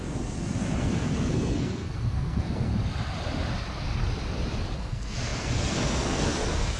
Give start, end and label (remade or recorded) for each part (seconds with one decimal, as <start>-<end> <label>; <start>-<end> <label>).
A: 0.0-2.7 remade; 2.7-4.8 recorded; 4.8-6.8 remade